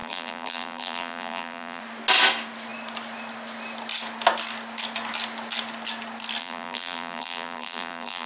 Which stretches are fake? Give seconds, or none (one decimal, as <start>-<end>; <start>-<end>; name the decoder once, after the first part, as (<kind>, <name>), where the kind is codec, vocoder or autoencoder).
0.0-1.8 (vocoder, BigVGAN v2); 6.4-8.3